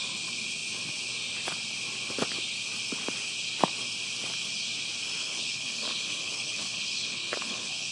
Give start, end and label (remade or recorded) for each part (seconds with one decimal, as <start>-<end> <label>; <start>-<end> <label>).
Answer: 0.0-5.2 recorded; 5.2-7.9 remade